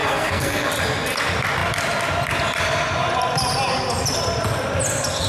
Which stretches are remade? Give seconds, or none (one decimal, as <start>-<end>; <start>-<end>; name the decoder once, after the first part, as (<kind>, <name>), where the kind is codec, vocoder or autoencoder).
0.0-0.7 (codec, SNAC)